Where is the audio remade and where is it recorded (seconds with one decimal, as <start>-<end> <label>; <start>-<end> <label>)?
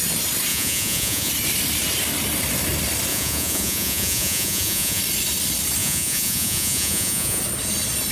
0.0-0.5 recorded; 0.5-1.3 remade; 1.3-3.1 recorded; 3.1-5.0 remade; 5.0-5.8 recorded; 5.8-7.4 remade; 7.4-8.1 recorded